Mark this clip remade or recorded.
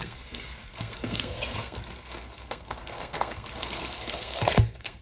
remade